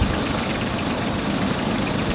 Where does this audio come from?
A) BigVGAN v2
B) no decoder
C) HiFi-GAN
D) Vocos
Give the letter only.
A